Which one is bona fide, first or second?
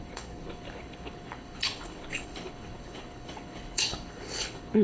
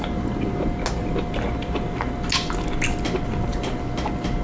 second